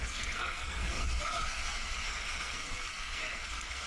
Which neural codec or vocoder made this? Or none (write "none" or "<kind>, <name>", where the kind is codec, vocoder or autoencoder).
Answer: codec, SNAC